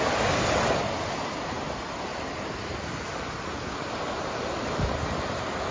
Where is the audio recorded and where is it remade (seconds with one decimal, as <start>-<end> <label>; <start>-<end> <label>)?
0.0-2.1 recorded; 2.1-5.7 remade

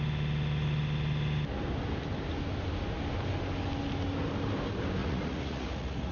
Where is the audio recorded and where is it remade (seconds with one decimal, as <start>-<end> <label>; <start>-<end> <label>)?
0.0-5.0 recorded; 5.0-6.1 remade

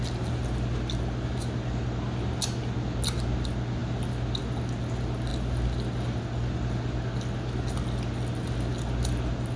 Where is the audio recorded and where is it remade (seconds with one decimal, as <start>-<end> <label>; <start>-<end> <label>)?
0.0-9.6 recorded

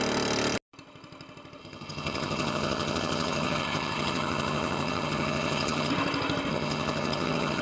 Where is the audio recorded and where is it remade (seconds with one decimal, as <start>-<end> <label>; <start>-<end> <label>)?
0.0-1.6 recorded; 1.6-5.9 remade; 5.9-6.5 recorded; 6.5-7.6 remade

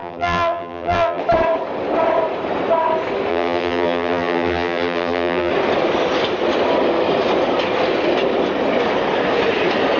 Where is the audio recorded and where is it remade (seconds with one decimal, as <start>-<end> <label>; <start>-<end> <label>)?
0.0-1.2 remade; 1.2-3.3 recorded; 3.3-5.5 remade; 5.5-10.0 recorded

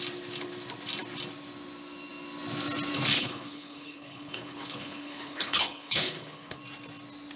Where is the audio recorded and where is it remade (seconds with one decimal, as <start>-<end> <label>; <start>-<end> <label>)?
0.0-3.1 recorded; 3.1-6.6 remade; 6.6-7.4 recorded

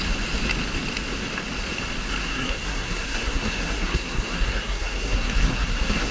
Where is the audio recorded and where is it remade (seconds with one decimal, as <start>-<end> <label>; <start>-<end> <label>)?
0.0-2.2 recorded; 2.2-6.1 remade